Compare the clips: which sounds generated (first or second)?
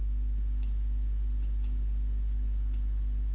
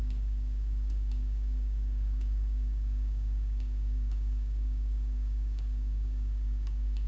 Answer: second